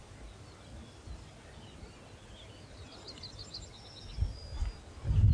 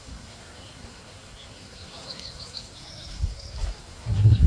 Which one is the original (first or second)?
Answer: first